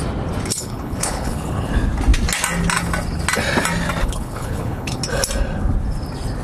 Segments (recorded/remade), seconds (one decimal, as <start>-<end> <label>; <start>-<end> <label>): 0.0-0.5 recorded; 0.5-1.7 remade; 1.7-4.0 recorded; 4.0-5.0 remade; 5.0-6.4 recorded